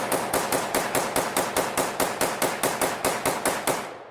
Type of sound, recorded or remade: recorded